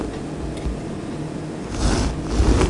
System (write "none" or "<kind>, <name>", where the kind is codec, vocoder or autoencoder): none